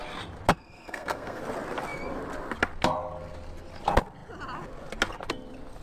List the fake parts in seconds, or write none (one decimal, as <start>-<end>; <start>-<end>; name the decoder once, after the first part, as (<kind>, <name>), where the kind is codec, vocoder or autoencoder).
0.5-1.4 (codec, SNAC)